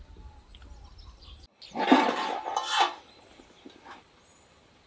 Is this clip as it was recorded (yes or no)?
yes